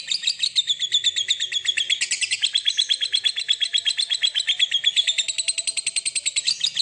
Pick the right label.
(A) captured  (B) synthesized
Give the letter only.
A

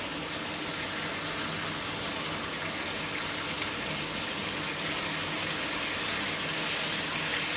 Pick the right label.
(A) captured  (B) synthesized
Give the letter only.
A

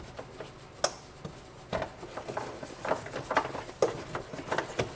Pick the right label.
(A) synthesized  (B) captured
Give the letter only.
B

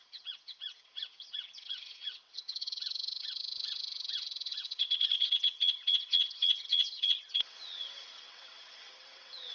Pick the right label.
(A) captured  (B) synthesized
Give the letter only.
B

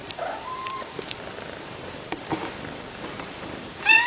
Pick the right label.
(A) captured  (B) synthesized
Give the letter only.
B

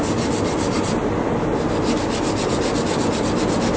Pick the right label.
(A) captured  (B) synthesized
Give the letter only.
A